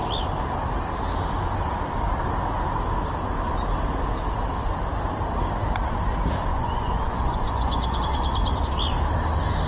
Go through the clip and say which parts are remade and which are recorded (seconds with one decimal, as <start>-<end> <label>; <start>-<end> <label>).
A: 0.0-6.5 recorded; 6.5-8.0 remade; 8.0-9.7 recorded